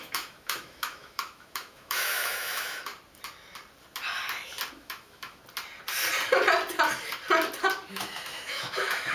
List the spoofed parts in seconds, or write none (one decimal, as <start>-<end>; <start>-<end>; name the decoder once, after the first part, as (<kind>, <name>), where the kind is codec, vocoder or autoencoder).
0.0-2.9 (autoencoder, DAC-VAE); 4.7-5.4; 7.9-9.1